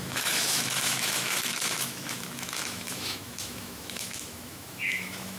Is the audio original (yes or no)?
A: no